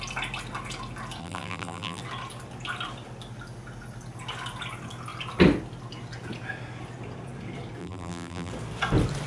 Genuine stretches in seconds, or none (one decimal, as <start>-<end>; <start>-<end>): 0.0-1.2; 2.0-7.8; 8.5-9.3